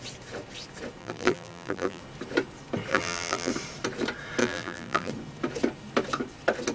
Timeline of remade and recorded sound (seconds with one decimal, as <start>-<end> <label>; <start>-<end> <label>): 0.0-1.0 recorded; 1.0-2.0 remade; 2.0-2.9 recorded; 2.9-3.5 remade; 3.5-4.4 recorded; 4.4-5.1 remade; 5.1-6.7 recorded